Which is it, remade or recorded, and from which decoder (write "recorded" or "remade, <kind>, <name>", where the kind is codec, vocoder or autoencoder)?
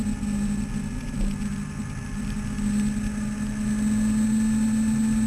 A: recorded